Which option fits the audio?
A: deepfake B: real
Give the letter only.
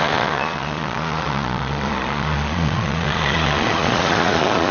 A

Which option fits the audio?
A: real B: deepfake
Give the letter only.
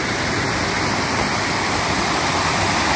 A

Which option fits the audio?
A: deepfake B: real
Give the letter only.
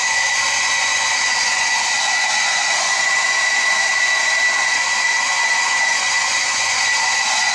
A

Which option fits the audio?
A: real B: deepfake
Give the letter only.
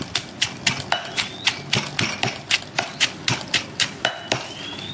A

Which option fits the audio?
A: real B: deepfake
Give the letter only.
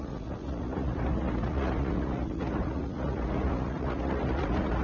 B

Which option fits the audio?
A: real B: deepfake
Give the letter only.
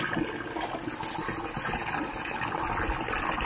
A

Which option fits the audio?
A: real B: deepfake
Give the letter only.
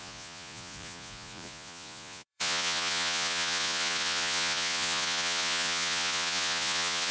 B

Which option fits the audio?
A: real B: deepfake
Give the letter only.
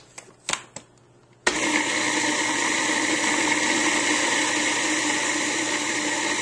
A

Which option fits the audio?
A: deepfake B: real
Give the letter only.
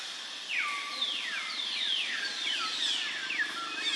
B